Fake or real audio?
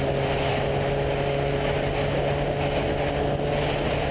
real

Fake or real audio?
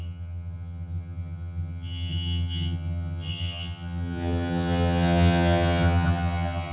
fake